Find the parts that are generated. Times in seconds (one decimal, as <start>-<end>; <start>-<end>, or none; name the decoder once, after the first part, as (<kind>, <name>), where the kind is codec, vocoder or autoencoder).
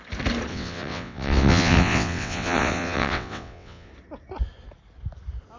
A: 0.5-3.9 (vocoder, WaveNeXt)